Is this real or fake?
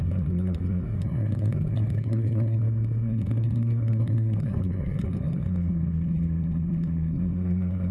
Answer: fake